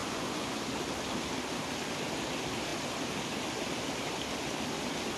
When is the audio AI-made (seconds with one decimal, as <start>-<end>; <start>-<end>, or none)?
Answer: 0.0-0.6